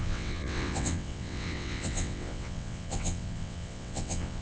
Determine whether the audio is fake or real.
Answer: fake